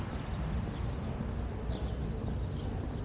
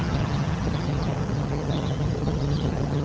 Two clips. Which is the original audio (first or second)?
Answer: first